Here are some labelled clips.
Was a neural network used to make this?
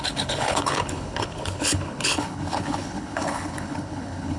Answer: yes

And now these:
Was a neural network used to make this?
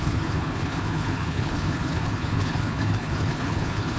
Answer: yes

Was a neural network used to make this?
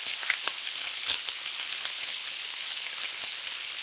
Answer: yes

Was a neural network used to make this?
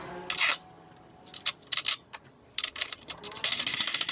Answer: no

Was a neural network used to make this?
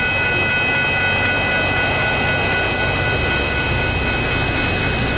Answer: no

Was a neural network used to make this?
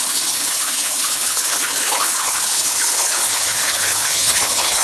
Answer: yes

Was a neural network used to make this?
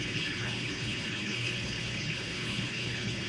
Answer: yes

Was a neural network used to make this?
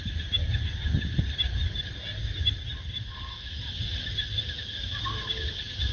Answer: no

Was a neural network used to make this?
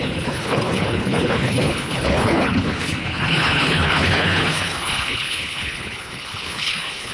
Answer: yes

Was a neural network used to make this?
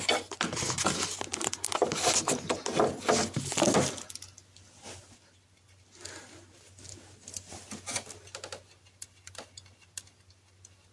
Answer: no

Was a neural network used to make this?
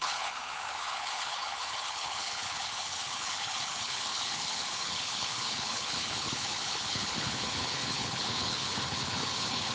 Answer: yes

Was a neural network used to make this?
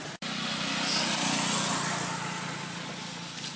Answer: no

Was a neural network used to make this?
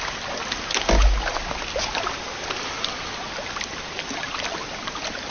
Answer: no